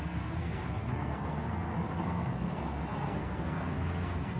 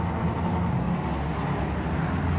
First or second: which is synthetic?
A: first